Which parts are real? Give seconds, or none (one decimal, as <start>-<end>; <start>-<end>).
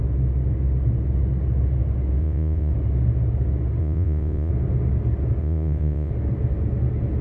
0.0-2.2; 2.7-3.8; 4.5-5.4; 6.1-7.2